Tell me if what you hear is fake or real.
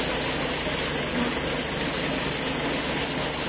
real